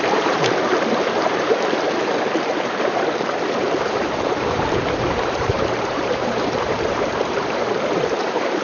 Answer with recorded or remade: remade